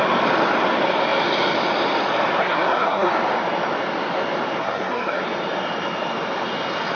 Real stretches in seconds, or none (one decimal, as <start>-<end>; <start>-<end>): 0.0-2.4; 3.1-4.6; 5.2-7.0